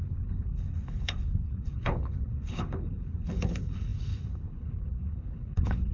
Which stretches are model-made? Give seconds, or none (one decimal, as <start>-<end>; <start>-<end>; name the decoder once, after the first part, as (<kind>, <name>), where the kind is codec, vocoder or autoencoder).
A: 0.0-5.9 (codec, HILCodec)